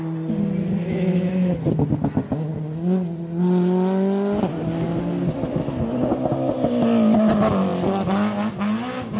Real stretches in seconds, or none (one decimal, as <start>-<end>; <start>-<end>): 0.0-0.8; 1.5-9.2